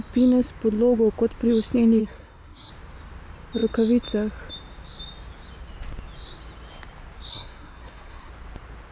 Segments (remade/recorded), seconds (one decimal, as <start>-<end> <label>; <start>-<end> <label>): 0.0-2.0 recorded; 2.0-2.7 remade; 2.7-7.3 recorded; 7.3-8.3 remade; 8.3-8.9 recorded